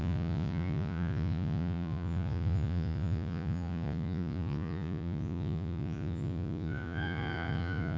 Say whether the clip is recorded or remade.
remade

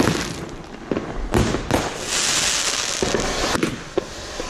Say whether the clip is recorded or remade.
recorded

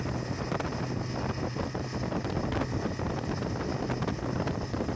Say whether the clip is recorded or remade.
recorded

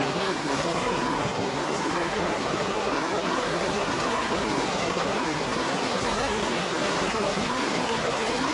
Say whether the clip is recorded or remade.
remade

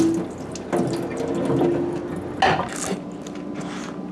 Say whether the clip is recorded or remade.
recorded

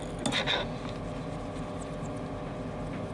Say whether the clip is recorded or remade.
recorded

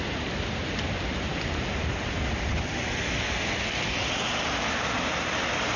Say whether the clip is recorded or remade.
recorded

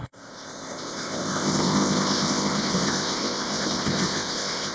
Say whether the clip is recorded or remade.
remade